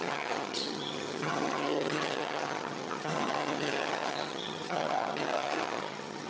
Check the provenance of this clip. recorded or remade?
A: remade